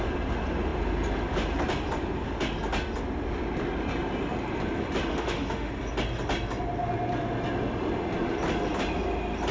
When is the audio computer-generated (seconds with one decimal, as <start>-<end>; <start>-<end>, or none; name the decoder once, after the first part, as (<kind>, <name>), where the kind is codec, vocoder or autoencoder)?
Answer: 5.1-5.7 (autoencoder, DAC-VAE)